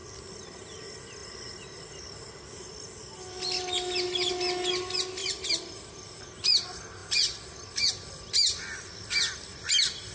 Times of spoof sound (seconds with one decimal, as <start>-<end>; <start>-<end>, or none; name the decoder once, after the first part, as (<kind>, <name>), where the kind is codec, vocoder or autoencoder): 5.2-6.2 (vocoder, BigVGAN v2)